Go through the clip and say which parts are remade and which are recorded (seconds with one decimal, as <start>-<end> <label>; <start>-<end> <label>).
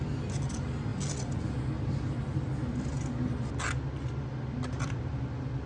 0.0-5.7 recorded